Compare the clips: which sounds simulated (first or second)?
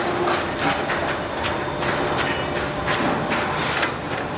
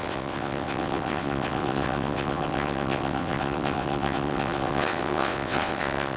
second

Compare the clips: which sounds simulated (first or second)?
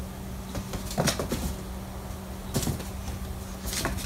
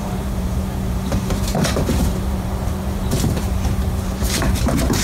second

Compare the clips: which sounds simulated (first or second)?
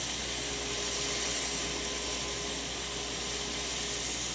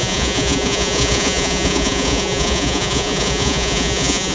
second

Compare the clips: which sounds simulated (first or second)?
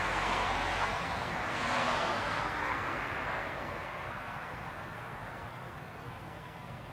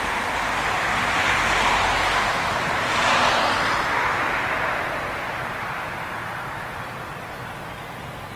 first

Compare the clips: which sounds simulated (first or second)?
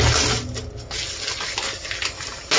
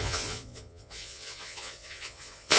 second